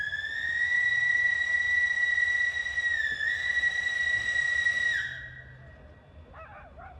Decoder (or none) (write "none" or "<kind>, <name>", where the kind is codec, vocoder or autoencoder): none